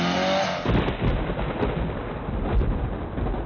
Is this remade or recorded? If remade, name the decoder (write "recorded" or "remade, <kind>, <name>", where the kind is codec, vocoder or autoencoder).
recorded